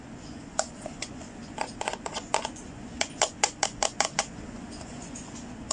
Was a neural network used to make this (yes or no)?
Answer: yes